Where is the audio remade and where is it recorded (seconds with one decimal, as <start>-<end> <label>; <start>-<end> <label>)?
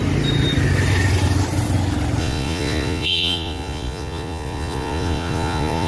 0.0-2.2 recorded; 2.2-5.9 remade